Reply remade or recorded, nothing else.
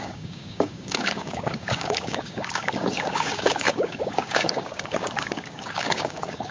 remade